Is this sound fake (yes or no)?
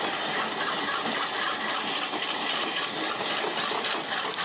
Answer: no